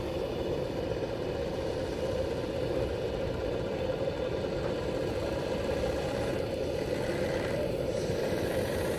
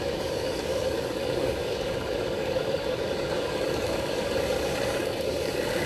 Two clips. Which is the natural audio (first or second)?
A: first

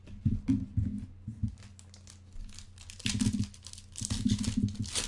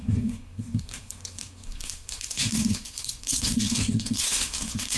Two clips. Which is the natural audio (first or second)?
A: first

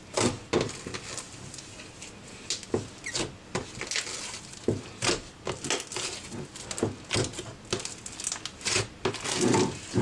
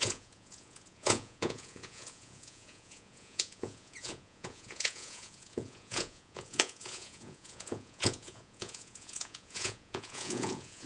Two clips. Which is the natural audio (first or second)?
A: first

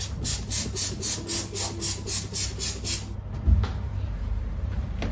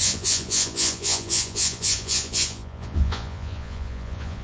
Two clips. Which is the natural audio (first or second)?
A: first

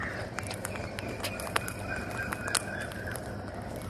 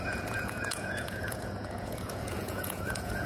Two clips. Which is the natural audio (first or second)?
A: first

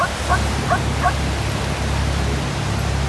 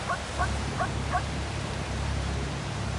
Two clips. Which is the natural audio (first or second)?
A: first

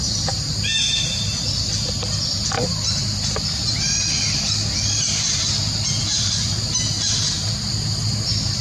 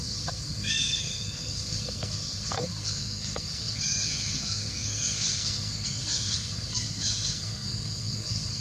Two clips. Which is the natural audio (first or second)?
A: first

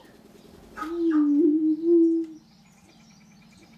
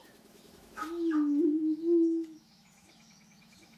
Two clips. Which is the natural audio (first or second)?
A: first